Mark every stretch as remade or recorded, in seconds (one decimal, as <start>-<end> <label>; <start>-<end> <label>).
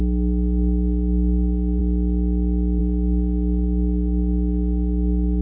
0.0-1.8 remade; 1.8-2.8 recorded; 2.8-5.4 remade